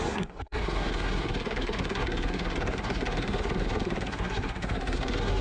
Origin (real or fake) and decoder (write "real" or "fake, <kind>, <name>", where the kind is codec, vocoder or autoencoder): fake, codec, SNAC